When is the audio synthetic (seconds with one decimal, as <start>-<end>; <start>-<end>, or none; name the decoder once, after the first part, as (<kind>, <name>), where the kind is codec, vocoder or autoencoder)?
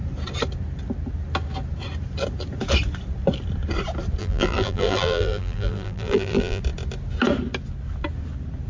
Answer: 4.2-6.6 (vocoder, BigVGAN v2)